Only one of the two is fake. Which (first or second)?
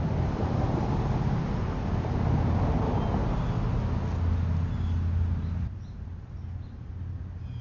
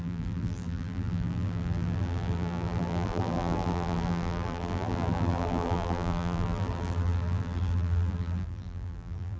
second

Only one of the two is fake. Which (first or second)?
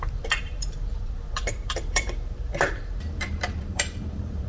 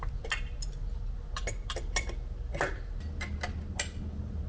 first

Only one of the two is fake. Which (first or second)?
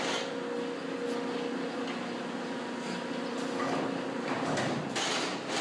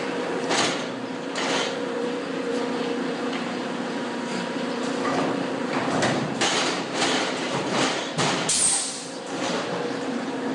second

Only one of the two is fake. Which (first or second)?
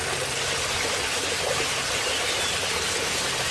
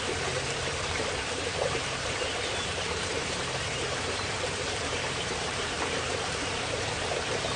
second